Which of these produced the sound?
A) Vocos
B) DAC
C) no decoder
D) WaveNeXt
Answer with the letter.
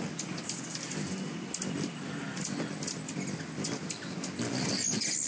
C